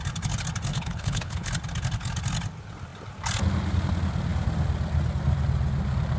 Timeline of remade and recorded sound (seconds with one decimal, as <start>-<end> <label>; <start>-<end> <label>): 0.0-0.7 recorded; 0.7-1.5 remade; 1.5-6.2 recorded